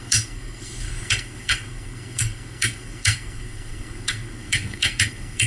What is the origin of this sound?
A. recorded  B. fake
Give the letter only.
B